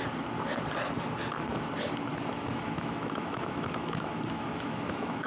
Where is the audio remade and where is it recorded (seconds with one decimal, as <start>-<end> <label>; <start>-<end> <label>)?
0.0-2.1 recorded; 2.1-5.3 remade